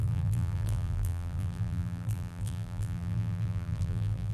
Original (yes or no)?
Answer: no